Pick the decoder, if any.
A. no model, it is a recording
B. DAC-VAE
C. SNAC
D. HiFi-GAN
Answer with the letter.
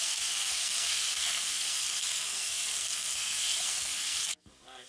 C